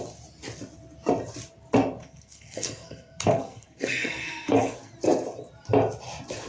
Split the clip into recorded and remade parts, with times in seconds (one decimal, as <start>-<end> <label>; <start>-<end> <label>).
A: 0.0-2.0 recorded; 2.0-4.9 remade; 4.9-6.5 recorded